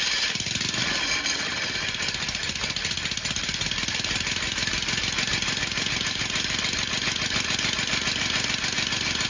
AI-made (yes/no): no